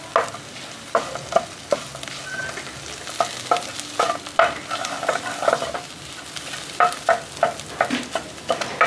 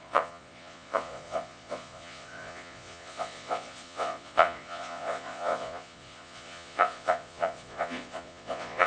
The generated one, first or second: second